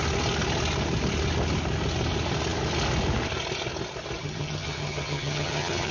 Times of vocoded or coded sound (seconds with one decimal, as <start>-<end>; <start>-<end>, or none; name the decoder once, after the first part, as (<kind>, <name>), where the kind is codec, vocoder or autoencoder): 4.2-5.9 (vocoder, HiFi-GAN)